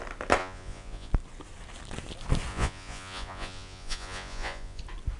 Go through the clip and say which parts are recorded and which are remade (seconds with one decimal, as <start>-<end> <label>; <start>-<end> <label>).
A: 0.0-0.4 recorded; 0.4-1.1 remade; 1.1-2.5 recorded; 2.5-4.8 remade; 4.8-5.2 recorded